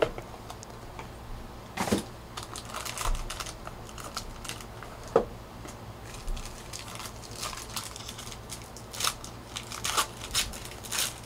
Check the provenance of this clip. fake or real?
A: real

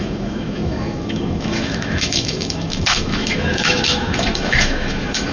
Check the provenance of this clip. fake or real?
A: fake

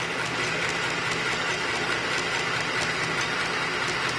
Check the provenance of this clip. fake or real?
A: real